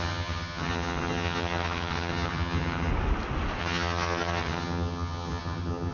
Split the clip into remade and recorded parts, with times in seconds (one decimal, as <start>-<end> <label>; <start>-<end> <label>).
0.0-2.9 remade; 2.9-3.6 recorded; 3.6-5.9 remade

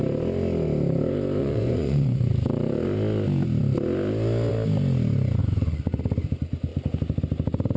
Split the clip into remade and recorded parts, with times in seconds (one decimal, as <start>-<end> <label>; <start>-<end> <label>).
0.0-1.4 recorded; 1.4-2.3 remade; 2.3-5.4 recorded; 5.4-6.0 remade; 6.0-7.8 recorded

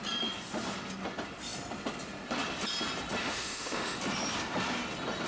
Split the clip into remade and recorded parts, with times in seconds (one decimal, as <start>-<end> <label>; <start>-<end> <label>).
0.0-3.2 recorded; 3.2-4.0 remade; 4.0-5.3 recorded

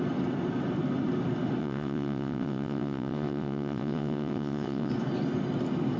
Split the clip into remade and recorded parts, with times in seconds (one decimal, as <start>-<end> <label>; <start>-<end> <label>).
0.0-1.6 recorded; 1.6-4.9 remade; 4.9-6.0 recorded

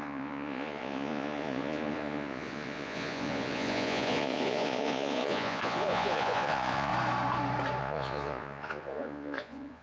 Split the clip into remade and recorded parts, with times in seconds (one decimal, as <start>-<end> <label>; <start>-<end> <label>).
0.0-6.9 remade; 6.9-7.8 recorded; 7.8-9.8 remade

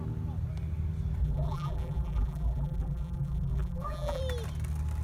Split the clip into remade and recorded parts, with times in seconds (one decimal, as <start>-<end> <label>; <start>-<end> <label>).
0.0-1.2 recorded; 1.2-4.2 remade; 4.2-5.0 recorded

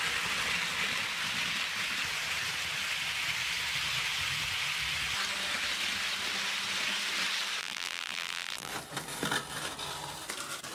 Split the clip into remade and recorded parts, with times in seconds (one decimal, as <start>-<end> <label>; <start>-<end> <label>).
0.0-7.6 recorded; 7.6-8.7 remade; 8.7-10.7 recorded